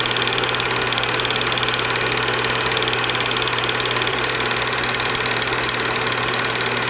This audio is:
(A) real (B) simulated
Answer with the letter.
A